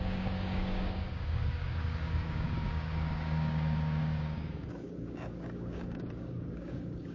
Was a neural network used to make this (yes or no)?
yes